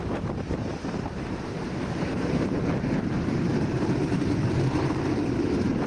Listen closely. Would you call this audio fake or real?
fake